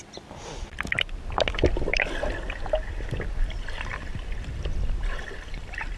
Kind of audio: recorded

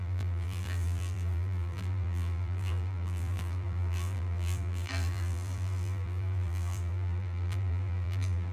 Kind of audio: remade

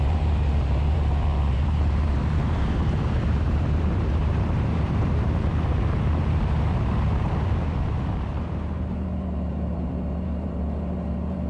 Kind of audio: remade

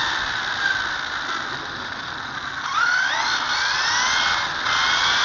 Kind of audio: recorded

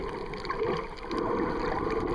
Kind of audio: recorded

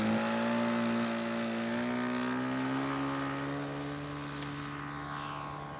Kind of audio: recorded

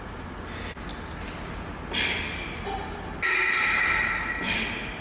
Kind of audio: recorded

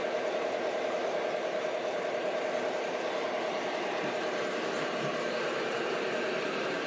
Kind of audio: remade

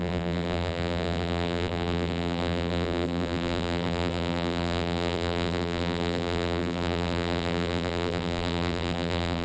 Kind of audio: remade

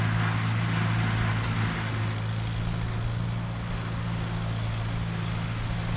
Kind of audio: recorded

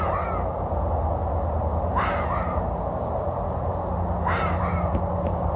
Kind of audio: recorded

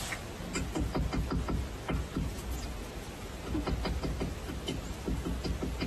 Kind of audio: recorded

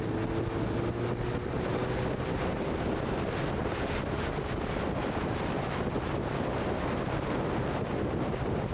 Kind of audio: recorded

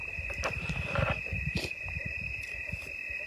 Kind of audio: remade